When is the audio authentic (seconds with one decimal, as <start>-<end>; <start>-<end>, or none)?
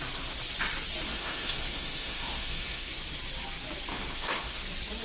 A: 0.0-1.1; 2.9-3.9; 4.6-5.0